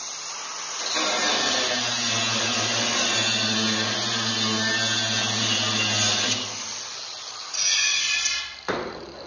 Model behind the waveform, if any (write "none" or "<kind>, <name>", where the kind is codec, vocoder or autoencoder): none